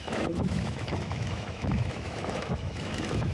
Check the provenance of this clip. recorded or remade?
remade